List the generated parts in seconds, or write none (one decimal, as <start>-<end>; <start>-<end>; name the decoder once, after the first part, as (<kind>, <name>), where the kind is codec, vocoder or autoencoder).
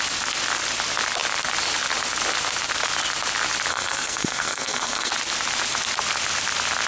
3.7-5.1 (codec, SNAC)